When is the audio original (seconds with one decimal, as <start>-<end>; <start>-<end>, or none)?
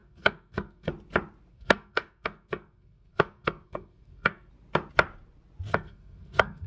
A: 0.9-1.5; 4.5-5.7